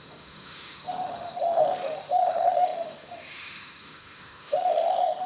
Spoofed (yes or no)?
yes